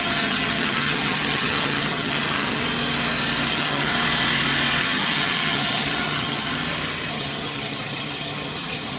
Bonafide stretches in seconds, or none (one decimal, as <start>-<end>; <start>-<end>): 2.6-3.5; 3.9-4.8; 6.5-7.1